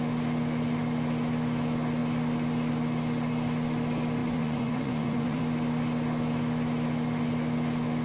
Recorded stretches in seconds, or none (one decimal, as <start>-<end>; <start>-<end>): 0.0-4.2; 5.4-8.0